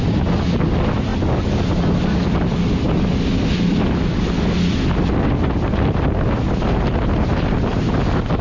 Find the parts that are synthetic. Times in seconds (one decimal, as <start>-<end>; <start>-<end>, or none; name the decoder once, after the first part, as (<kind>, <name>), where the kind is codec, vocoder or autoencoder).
none